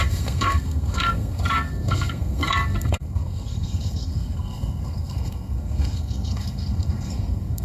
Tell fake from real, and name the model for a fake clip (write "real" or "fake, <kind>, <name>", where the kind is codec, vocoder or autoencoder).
fake, codec, SNAC